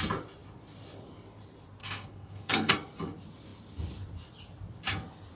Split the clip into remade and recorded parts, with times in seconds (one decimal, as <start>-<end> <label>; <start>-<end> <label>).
0.0-1.8 recorded; 1.8-2.7 remade; 2.7-5.4 recorded